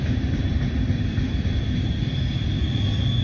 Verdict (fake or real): real